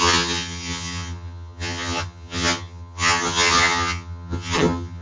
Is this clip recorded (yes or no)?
no